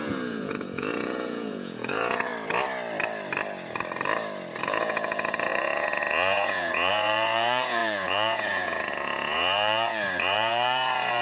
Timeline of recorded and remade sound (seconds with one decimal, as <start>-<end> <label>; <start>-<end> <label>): 0.0-2.3 remade; 2.3-4.6 recorded; 4.6-11.2 remade